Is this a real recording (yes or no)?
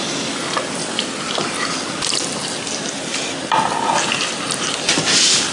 yes